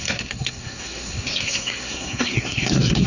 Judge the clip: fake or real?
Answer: fake